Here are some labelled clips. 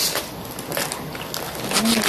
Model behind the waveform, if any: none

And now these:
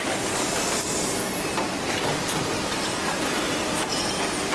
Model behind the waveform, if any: none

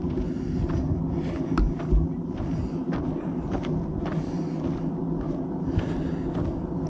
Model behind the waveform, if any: none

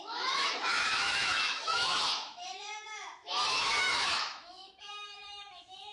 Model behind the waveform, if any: autoencoder, DAC-VAE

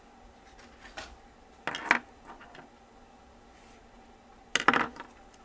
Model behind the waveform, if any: none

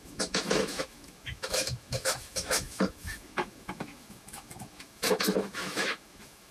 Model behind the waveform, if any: autoencoder, DAC-VAE